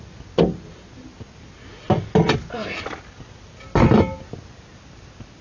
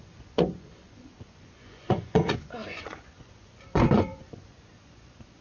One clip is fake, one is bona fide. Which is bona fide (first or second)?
first